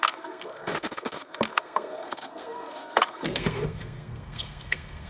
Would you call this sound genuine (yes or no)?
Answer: no